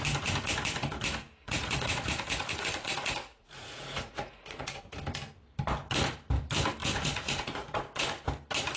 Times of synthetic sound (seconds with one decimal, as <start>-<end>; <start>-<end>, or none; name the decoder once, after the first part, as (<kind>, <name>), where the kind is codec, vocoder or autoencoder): 1.4-4.9 (vocoder, Vocos); 6.8-8.1